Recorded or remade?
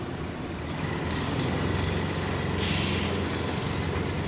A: recorded